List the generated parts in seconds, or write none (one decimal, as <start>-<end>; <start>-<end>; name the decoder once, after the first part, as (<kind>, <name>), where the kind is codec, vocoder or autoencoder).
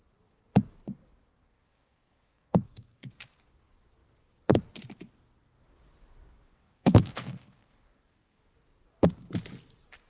1.3-3.1 (codec, SNAC); 6.5-8.4